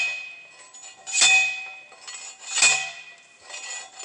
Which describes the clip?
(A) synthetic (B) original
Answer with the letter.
B